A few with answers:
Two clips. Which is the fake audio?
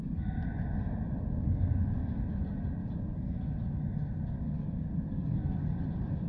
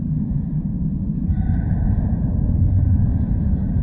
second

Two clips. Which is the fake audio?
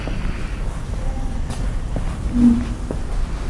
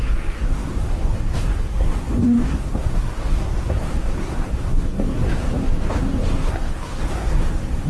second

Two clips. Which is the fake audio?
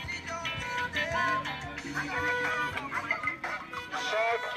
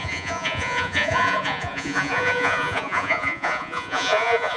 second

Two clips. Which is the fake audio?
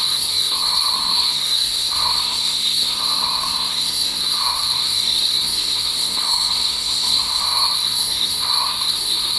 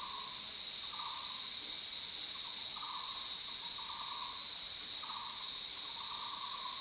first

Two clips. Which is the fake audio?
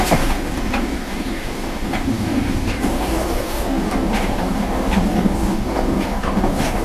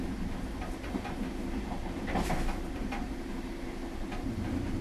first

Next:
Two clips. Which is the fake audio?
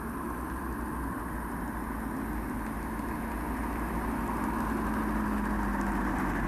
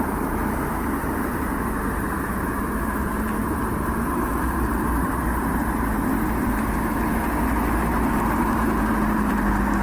second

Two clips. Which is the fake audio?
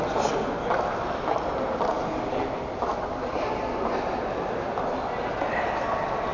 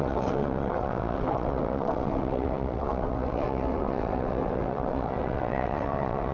second